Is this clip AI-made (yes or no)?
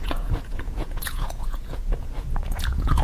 yes